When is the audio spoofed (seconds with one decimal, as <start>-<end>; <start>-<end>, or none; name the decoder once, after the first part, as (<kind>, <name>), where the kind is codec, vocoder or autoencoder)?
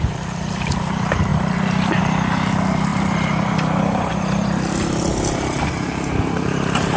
0.0-7.0 (vocoder, BigVGAN v2)